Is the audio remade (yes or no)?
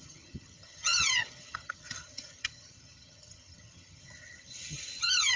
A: yes